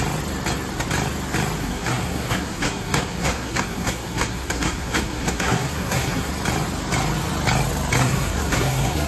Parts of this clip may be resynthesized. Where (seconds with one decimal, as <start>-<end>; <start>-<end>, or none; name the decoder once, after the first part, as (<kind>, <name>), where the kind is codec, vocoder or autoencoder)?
1.6-6.3 (codec, SNAC); 8.0-9.1